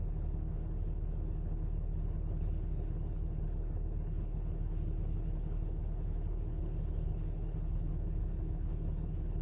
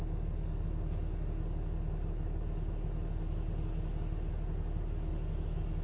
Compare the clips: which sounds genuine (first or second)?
second